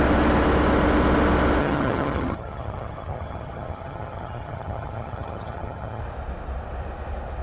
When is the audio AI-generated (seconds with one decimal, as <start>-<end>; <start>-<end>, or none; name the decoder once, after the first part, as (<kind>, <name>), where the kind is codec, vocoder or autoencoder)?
1.6-6.0 (vocoder, HiFi-GAN)